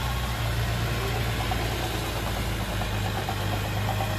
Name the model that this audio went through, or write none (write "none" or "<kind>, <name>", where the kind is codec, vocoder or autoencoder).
none